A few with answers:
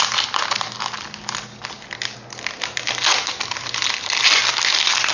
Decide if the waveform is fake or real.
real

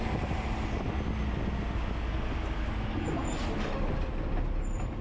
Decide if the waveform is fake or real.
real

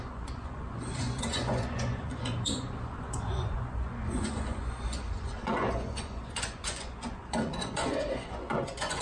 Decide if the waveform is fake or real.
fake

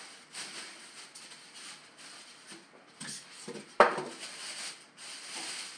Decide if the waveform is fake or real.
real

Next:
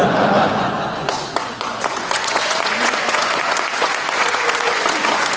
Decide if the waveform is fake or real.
fake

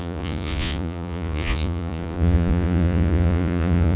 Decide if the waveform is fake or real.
fake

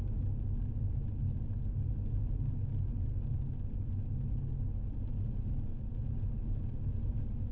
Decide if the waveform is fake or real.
real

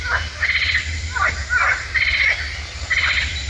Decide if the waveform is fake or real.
real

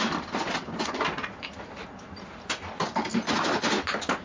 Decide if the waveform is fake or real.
real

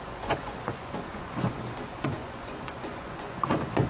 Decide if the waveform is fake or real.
fake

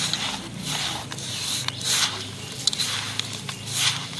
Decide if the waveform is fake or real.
real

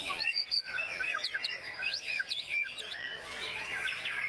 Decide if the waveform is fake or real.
fake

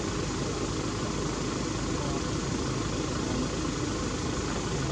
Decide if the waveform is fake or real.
real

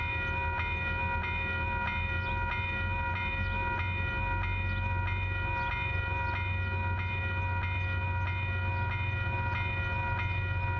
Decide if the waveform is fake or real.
real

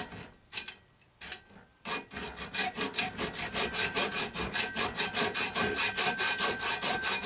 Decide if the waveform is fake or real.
real